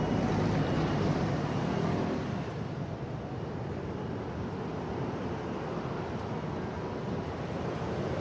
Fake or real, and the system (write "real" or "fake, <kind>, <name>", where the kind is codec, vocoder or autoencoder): real